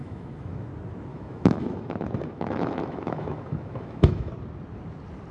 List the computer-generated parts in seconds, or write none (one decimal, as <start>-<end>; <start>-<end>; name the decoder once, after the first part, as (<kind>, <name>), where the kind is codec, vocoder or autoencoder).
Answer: 0.0-0.7 (autoencoder, DAC-VAE); 1.1-4.3